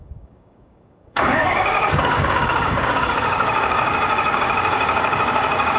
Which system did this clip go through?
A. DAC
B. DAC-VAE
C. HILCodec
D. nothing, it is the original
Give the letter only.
A